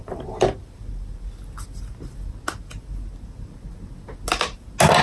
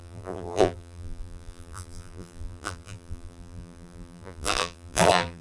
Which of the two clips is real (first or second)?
first